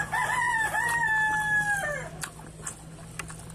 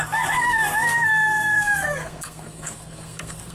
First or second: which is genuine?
first